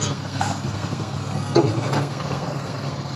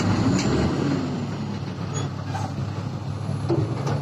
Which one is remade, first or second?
first